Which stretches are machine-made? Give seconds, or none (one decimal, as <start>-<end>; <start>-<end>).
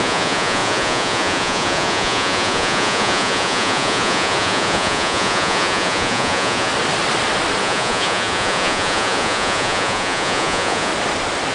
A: 0.0-6.7; 7.6-10.9